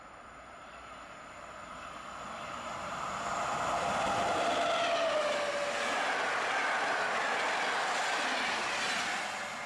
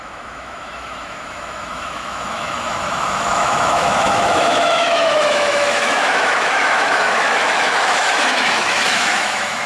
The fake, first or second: second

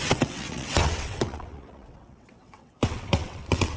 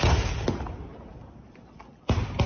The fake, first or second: first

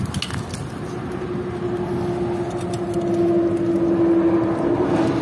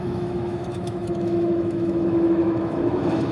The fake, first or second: second